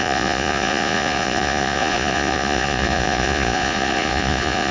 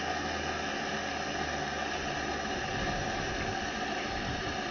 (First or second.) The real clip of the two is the second